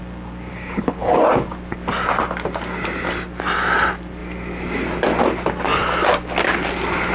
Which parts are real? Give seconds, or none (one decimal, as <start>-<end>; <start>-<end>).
0.0-0.5; 1.2-7.1